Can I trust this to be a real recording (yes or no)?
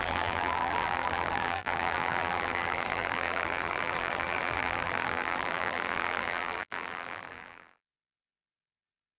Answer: no